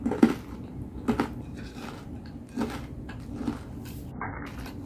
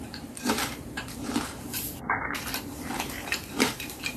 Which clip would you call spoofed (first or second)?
second